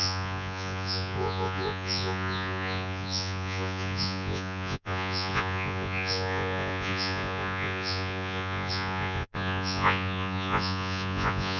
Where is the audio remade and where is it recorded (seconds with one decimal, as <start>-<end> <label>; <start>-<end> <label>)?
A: 0.0-11.6 remade